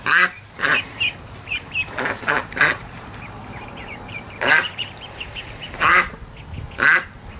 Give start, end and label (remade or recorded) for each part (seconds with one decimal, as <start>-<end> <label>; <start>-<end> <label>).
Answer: 0.0-5.9 remade; 5.9-7.0 recorded; 7.0-7.4 remade